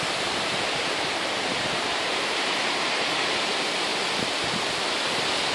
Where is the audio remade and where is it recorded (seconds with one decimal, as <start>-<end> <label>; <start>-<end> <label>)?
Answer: 0.0-1.5 recorded; 1.5-3.5 remade; 3.5-5.5 recorded